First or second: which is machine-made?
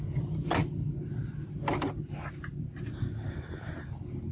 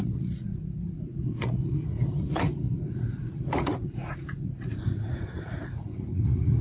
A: second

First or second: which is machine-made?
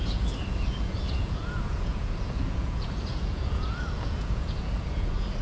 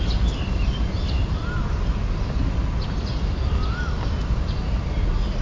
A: first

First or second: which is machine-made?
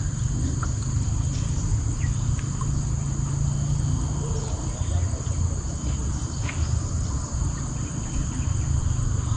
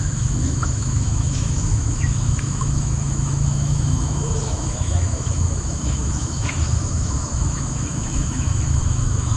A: second